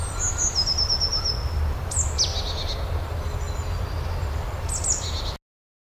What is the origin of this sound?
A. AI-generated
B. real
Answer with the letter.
B